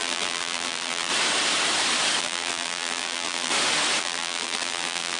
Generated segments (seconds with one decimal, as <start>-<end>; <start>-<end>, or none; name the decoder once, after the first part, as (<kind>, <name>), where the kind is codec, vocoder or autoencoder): 0.0-1.1 (vocoder, BigVGAN v2); 2.2-3.5; 4.0-5.2